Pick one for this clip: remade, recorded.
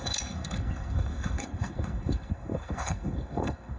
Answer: remade